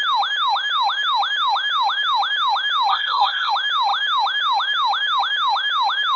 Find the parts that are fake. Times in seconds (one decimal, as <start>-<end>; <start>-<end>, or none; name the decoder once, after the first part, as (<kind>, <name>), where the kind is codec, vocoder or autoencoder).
2.9-3.5 (codec, SNAC)